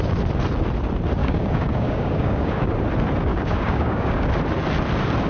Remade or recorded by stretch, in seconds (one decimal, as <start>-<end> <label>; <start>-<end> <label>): 0.0-1.2 recorded; 1.2-2.7 remade; 2.7-3.3 recorded; 3.3-4.3 remade; 4.3-5.3 recorded